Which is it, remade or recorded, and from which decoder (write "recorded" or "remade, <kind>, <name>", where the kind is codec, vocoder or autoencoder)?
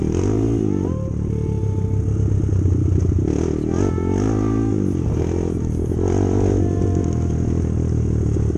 recorded